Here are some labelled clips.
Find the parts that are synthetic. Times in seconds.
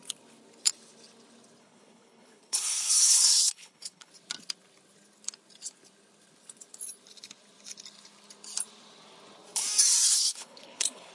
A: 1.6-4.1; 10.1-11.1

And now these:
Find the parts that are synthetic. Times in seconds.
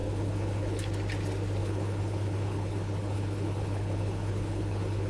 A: 0.0-0.8; 1.6-5.1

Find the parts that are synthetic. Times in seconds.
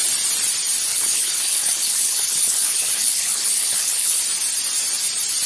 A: 0.9-4.2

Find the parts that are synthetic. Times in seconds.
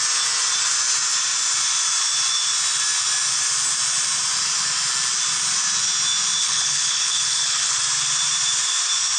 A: 6.4-7.8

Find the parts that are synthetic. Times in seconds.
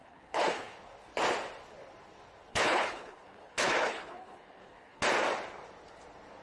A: 0.0-0.8; 2.5-5.0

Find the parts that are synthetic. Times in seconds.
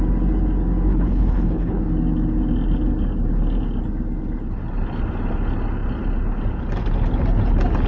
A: 0.9-1.8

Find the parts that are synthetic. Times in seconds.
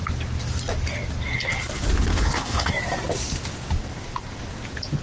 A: 2.1-2.7